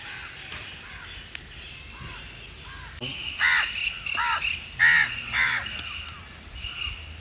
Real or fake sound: real